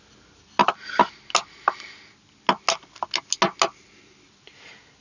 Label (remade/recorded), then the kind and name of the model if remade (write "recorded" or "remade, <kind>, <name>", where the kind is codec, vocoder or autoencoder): recorded